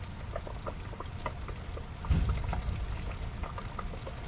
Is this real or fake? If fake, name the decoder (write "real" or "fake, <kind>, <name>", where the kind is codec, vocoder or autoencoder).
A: real